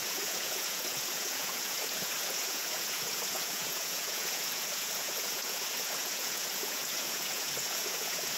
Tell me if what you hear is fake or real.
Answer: fake